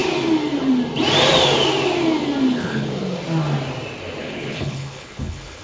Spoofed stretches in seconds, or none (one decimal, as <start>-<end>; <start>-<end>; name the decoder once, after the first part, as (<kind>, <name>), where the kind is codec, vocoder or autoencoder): 2.5-3.0 (codec, HILCodec); 4.2-5.6